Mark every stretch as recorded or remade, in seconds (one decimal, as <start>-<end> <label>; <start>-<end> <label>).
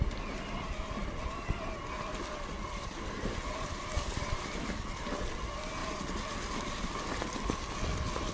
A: 0.0-8.3 recorded